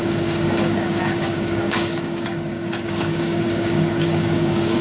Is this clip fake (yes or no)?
yes